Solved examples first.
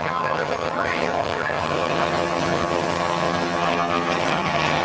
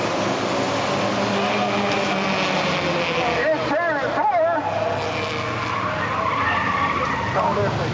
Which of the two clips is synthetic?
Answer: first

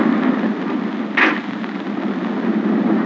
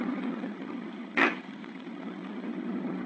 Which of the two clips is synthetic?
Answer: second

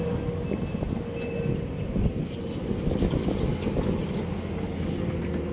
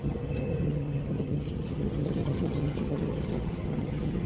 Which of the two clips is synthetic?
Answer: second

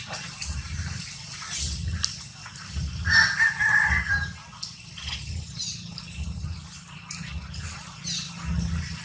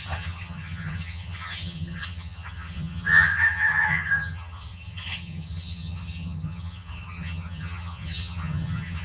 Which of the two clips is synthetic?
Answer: second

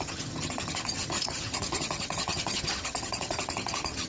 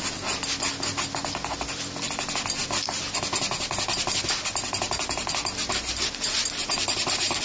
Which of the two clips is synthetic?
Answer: first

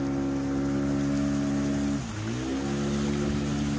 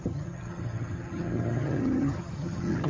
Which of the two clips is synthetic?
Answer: second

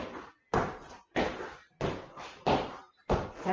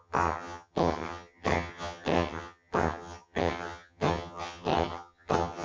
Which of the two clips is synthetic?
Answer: second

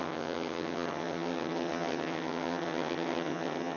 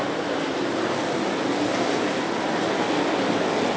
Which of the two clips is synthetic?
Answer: first